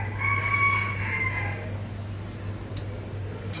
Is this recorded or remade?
recorded